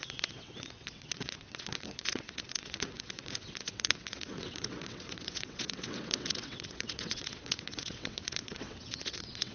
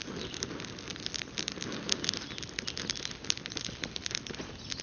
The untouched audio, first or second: second